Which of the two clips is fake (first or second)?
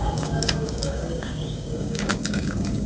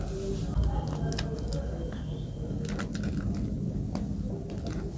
first